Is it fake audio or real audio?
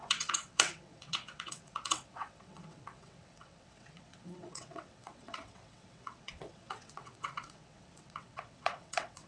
fake